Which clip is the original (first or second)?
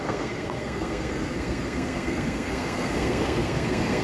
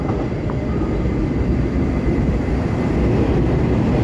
second